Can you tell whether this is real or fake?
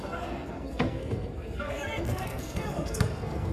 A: fake